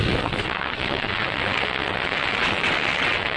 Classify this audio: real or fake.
fake